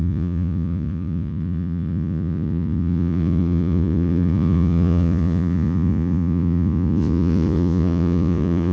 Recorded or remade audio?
remade